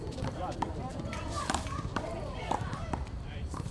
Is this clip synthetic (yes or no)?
yes